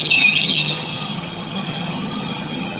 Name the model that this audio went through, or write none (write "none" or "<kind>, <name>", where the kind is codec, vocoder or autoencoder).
vocoder, HiFi-GAN